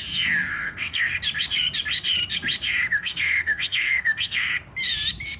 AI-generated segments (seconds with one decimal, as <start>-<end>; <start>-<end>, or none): 0.5-1.1; 2.9-4.5